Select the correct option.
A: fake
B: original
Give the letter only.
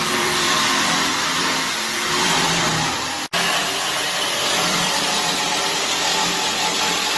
A